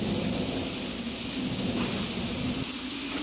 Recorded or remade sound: recorded